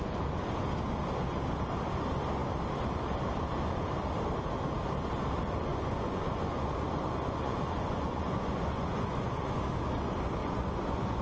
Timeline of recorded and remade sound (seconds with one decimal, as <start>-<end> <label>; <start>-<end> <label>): 0.0-5.7 recorded; 5.7-9.6 remade; 9.6-10.4 recorded; 10.4-11.2 remade